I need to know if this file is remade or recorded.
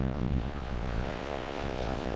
remade